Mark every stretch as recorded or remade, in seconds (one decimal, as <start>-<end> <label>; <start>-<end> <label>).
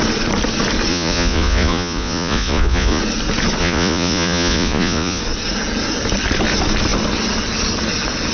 0.0-0.9 recorded; 0.9-3.0 remade; 3.0-3.6 recorded; 3.6-5.2 remade; 5.2-8.3 recorded